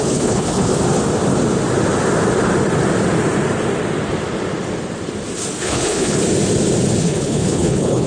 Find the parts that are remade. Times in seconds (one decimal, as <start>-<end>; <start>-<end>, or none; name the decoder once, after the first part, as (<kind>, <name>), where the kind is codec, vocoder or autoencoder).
0.0-0.7 (codec, HILCodec); 5.6-6.2; 7.0-8.1